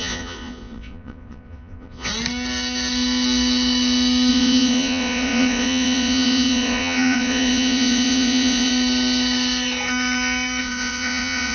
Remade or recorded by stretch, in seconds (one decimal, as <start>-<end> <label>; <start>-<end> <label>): 0.0-2.1 remade; 2.1-4.3 recorded; 4.3-8.7 remade; 8.7-10.6 recorded; 10.6-11.5 remade